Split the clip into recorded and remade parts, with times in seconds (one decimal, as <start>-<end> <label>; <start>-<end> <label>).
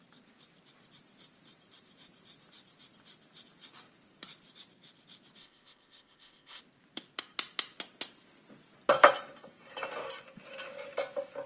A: 0.0-5.4 recorded; 5.4-6.6 remade; 6.6-11.5 recorded